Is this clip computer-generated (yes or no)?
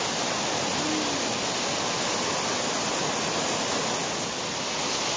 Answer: no